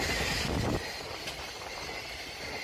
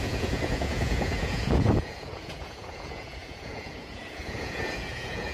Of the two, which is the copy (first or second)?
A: second